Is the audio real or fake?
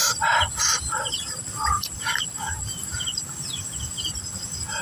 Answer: fake